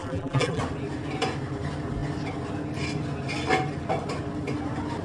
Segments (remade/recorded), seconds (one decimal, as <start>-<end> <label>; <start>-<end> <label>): 0.0-0.6 remade; 0.6-5.0 recorded